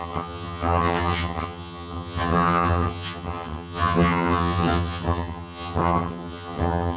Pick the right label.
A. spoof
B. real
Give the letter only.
A